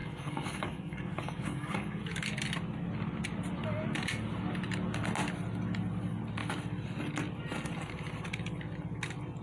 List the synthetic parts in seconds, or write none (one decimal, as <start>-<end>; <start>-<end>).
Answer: 0.0-2.0